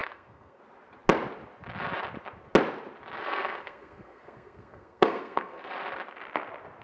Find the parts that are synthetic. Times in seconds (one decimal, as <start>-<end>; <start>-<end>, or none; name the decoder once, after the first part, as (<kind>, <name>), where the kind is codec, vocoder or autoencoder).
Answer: 0.0-0.6 (codec, SNAC); 3.2-5.7